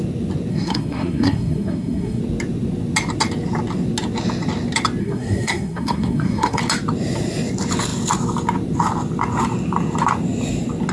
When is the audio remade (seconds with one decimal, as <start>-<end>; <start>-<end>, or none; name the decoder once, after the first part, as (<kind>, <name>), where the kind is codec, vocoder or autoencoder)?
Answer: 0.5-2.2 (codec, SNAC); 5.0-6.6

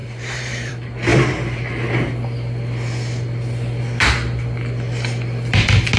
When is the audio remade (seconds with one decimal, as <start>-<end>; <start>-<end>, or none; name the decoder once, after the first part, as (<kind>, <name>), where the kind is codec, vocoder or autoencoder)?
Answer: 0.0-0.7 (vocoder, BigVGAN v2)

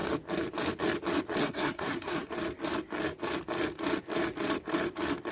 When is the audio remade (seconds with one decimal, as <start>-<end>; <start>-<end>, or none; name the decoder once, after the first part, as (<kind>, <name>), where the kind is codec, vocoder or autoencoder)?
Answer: 1.4-2.3 (codec, SNAC)

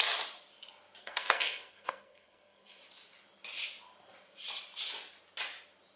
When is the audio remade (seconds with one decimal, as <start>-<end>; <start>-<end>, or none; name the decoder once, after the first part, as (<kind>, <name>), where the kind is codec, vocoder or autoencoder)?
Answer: 1.0-2.8 (codec, SNAC)

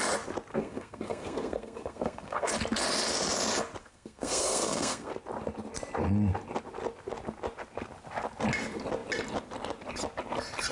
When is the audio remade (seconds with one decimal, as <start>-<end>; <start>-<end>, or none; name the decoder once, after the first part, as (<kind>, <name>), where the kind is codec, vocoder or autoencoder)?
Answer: 0.5-2.5 (codec, SNAC); 3.8-5.1